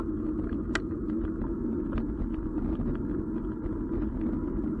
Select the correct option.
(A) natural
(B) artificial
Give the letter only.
A